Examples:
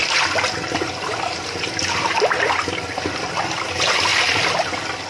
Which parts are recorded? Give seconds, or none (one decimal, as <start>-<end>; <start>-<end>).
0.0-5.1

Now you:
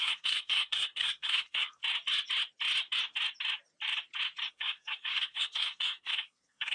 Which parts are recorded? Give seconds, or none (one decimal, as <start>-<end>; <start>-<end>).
1.8-4.5

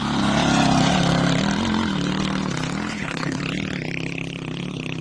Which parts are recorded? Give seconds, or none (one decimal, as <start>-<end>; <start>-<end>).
0.0-2.9; 3.4-5.0

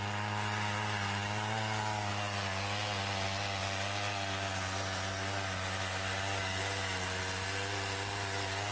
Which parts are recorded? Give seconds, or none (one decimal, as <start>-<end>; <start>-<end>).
0.0-8.7